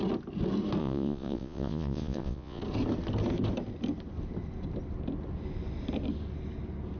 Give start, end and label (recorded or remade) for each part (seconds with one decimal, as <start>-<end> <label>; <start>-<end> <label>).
0.0-0.8 recorded; 0.8-2.6 remade; 2.6-7.0 recorded